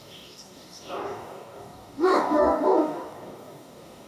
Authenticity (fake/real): fake